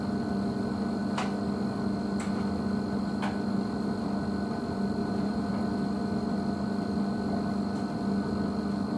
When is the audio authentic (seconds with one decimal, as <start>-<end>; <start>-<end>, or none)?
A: 0.0-5.0; 5.5-9.0